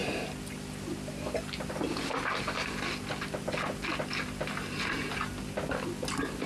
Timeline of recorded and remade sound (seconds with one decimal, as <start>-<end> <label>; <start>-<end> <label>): 0.0-6.5 recorded